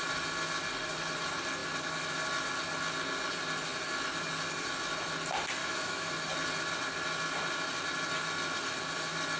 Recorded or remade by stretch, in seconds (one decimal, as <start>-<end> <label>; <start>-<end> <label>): 0.0-5.6 recorded; 5.6-6.1 remade; 6.1-9.4 recorded